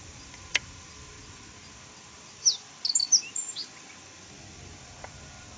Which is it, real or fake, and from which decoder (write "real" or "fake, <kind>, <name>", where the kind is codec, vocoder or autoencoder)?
real